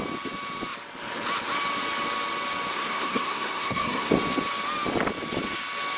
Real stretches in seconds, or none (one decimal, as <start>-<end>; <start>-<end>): 0.0-2.7; 4.1-6.0